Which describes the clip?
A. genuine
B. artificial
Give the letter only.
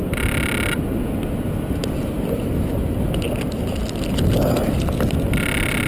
A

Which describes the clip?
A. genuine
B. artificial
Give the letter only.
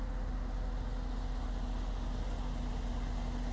A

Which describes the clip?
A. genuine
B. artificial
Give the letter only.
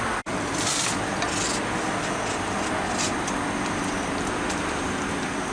A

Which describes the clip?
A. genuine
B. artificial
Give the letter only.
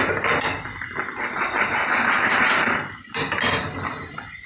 A